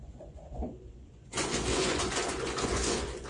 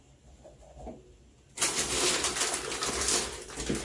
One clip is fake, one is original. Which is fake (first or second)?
first